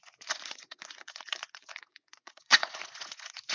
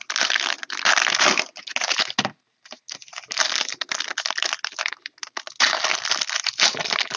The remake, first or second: first